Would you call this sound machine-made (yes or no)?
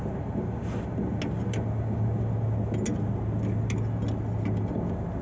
no